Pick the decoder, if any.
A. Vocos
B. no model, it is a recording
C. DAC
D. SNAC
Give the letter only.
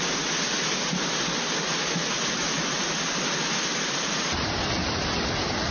B